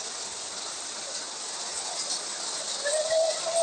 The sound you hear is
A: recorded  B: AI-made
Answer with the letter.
A